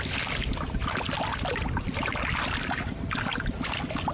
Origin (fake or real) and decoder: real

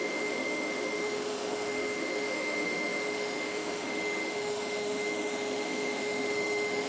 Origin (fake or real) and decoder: fake, autoencoder, DAC-VAE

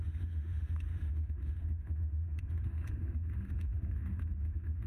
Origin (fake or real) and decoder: fake, autoencoder, DAC-VAE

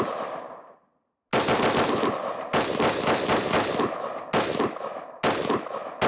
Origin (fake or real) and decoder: real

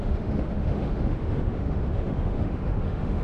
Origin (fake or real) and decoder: fake, autoencoder, DAC-VAE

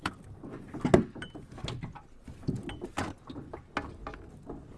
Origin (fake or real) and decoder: real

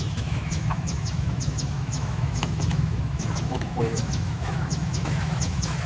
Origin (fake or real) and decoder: fake, autoencoder, DAC-VAE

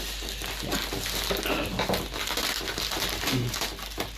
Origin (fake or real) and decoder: real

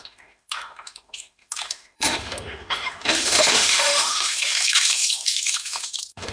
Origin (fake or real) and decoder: fake, autoencoder, DAC-VAE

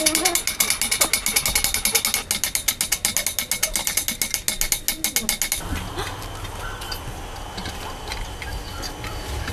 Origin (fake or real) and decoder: real